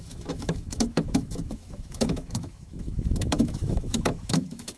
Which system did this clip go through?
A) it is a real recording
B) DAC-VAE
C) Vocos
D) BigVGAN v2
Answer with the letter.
B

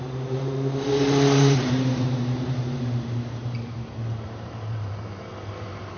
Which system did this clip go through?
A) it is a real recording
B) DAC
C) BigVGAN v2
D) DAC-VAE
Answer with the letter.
C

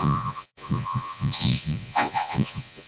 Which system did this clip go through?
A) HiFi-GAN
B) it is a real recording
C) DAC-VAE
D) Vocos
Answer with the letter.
D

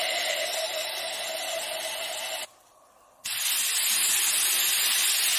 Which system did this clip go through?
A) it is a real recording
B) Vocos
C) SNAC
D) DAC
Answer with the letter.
A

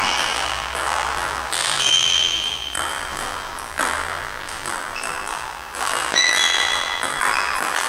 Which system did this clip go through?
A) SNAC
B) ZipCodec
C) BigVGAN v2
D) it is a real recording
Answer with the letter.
C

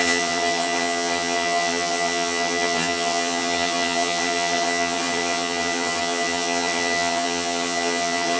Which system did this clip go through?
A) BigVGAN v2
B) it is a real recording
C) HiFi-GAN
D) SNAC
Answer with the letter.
C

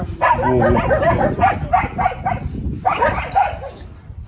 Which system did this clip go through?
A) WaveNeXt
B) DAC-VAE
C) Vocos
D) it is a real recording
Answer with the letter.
D